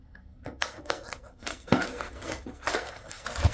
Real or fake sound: fake